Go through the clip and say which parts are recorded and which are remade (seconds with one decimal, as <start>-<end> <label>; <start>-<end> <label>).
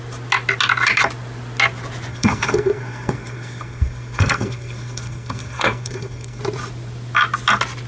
0.0-2.1 recorded; 2.1-6.4 remade; 6.4-7.9 recorded